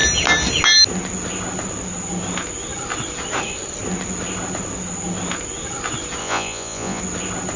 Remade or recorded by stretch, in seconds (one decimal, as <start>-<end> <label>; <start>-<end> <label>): 0.0-6.2 recorded; 6.2-7.0 remade; 7.0-7.6 recorded